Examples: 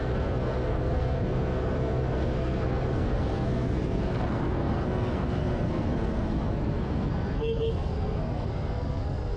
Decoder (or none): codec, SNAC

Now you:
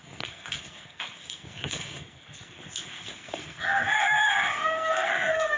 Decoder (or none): codec, SNAC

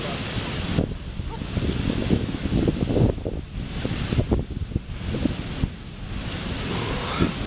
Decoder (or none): none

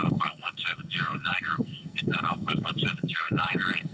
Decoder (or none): codec, SNAC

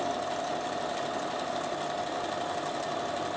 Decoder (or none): none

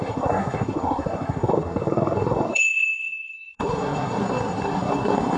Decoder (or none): codec, SNAC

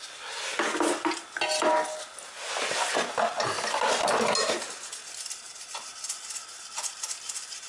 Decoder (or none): none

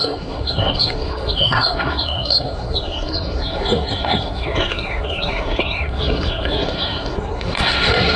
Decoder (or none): codec, SNAC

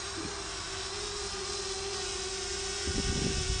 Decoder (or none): none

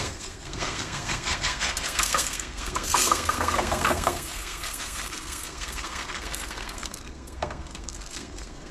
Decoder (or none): codec, SNAC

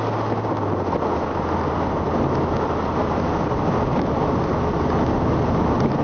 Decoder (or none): none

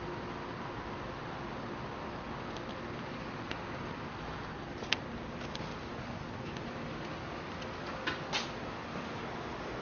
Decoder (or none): none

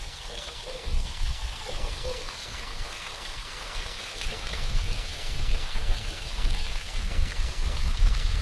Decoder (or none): codec, SNAC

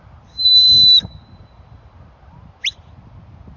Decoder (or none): none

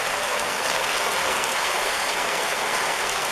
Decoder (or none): codec, SNAC